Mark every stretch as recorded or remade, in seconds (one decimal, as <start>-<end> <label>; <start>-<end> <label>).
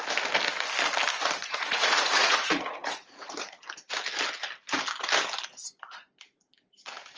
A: 0.0-1.4 recorded; 1.4-3.6 remade; 3.6-7.2 recorded